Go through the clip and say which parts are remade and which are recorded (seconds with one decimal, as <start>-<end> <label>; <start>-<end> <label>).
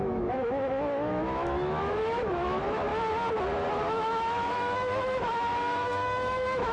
0.0-2.9 remade; 2.9-3.7 recorded; 3.7-6.7 remade